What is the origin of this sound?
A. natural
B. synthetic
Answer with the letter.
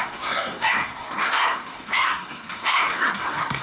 B